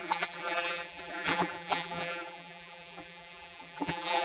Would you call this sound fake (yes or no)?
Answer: yes